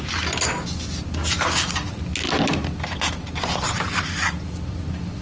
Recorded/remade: recorded